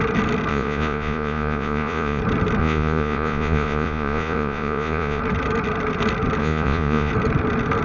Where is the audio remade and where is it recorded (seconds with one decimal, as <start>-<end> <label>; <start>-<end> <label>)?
0.0-0.5 recorded; 0.5-2.2 remade; 2.2-2.6 recorded; 2.6-5.2 remade; 5.2-6.4 recorded; 6.4-7.1 remade; 7.1-7.8 recorded